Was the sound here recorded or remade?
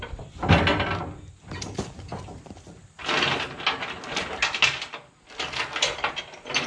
recorded